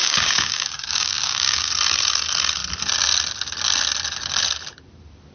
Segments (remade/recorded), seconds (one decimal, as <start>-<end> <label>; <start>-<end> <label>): 0.0-1.7 remade; 1.7-5.3 recorded

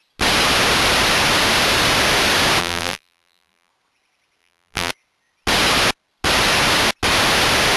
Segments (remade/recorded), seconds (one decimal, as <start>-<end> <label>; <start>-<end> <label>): 0.0-2.6 recorded; 2.6-3.7 remade; 3.7-4.4 recorded; 4.4-4.9 remade; 4.9-7.8 recorded

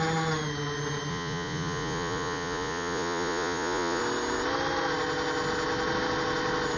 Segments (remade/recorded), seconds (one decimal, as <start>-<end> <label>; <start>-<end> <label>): 0.0-1.1 recorded; 1.1-4.0 remade; 4.0-6.8 recorded

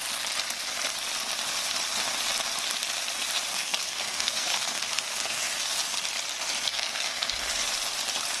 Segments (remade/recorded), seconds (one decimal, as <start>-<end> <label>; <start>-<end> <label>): 0.0-3.5 recorded; 3.5-5.6 remade; 5.6-6.7 recorded; 6.7-7.3 remade; 7.3-8.4 recorded

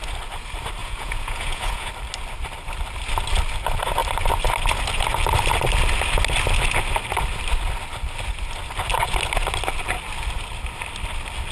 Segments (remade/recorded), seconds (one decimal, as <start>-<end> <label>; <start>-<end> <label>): 0.0-0.8 recorded; 0.8-1.9 remade; 1.9-11.5 recorded

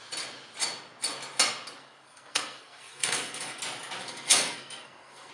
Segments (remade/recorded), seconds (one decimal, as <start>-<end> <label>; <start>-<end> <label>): 0.0-1.8 recorded; 1.8-3.6 remade; 3.6-4.0 recorded; 4.0-5.3 remade

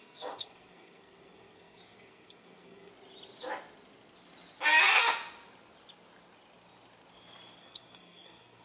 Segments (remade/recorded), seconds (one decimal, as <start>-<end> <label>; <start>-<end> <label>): 0.0-2.9 remade; 2.9-7.6 recorded; 7.6-8.6 remade

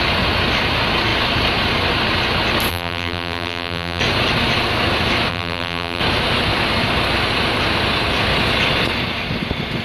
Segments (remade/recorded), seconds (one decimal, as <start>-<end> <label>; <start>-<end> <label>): 0.0-2.7 recorded; 2.7-4.0 remade; 4.0-5.3 recorded; 5.3-6.0 remade; 6.0-9.8 recorded